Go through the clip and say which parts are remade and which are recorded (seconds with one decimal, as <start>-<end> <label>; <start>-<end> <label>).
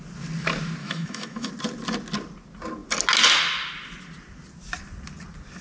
0.0-0.8 recorded; 0.8-1.5 remade; 1.5-5.6 recorded